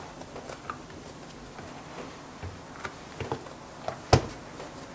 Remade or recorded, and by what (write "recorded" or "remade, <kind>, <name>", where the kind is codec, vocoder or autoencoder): recorded